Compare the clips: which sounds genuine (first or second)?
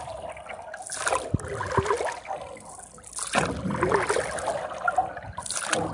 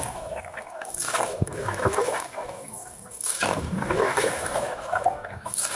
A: first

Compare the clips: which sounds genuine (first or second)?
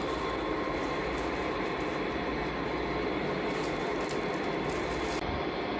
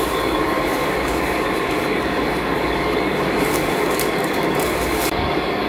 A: first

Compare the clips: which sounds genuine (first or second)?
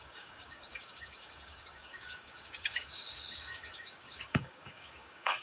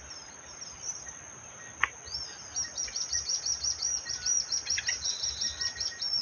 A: second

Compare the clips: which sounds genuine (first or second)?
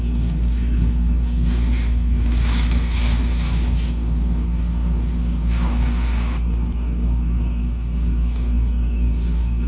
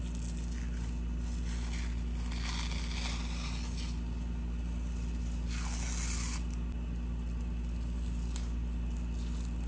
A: second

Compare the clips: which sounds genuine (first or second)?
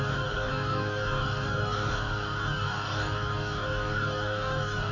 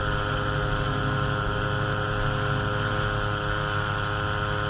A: second